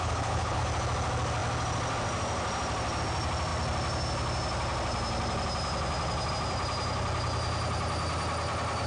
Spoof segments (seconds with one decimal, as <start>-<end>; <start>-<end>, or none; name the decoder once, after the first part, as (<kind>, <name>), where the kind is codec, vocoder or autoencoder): 0.0-0.6 (codec, HILCodec)